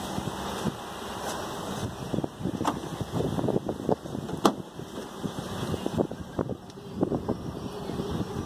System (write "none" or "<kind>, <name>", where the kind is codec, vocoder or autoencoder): none